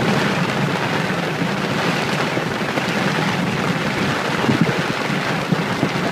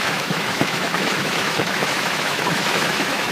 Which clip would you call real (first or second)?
first